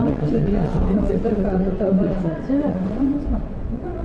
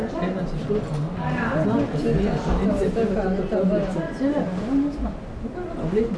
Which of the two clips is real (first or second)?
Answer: second